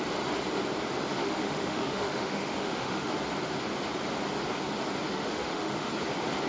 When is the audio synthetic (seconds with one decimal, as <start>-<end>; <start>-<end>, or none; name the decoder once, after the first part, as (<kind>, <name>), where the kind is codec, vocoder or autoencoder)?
1.2-3.1 (autoencoder, DAC-VAE); 5.1-5.9